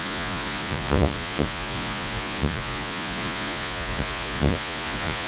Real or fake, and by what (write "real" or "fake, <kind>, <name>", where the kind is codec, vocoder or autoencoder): fake, vocoder, Vocos